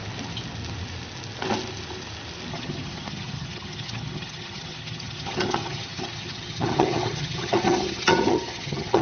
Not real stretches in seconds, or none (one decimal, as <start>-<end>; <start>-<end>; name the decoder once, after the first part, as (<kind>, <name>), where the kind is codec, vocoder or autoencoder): 2.5-9.0 (vocoder, HiFi-GAN)